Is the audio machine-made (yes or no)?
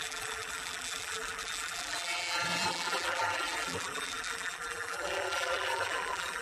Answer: yes